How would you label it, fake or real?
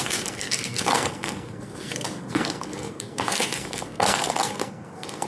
fake